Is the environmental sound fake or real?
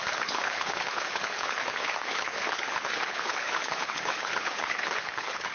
fake